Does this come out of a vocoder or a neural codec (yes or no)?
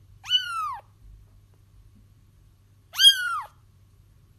yes